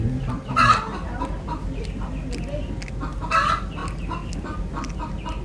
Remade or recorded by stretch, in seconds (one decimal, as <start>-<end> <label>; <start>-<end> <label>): 0.0-5.4 recorded